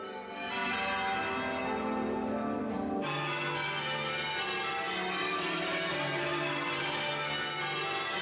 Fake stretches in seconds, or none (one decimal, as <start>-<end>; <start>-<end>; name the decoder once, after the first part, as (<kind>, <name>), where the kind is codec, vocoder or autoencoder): 5.2-7.1 (vocoder, BigVGAN v2)

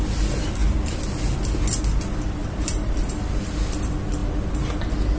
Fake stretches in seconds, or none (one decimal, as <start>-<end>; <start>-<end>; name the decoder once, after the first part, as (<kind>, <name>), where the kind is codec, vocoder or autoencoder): 2.4-3.1 (vocoder, BigVGAN v2)